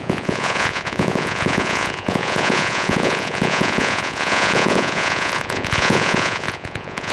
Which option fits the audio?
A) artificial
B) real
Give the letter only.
A